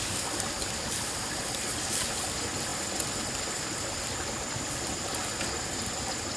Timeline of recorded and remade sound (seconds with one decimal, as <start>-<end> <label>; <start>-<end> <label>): 0.0-6.4 recorded